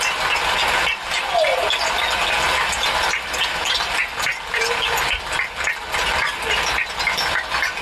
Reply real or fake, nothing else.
fake